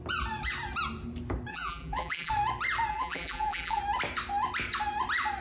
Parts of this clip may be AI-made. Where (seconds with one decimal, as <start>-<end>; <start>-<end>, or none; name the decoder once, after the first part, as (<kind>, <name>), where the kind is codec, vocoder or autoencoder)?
1.5-2.3 (vocoder, BigVGAN v2); 2.9-3.8